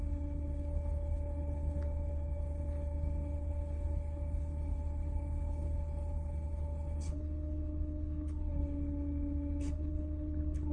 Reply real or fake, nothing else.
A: fake